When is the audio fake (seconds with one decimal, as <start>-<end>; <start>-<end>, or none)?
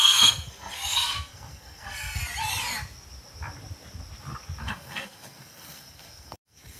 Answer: 0.0-2.2; 4.6-6.8